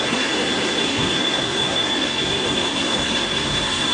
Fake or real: fake